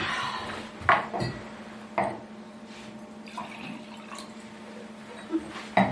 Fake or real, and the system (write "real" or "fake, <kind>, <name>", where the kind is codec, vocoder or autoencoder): real